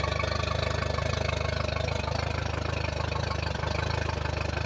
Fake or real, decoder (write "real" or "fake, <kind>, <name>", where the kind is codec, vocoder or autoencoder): real